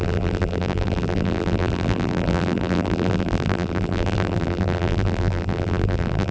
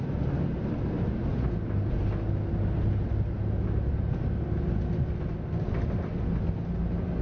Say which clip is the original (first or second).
second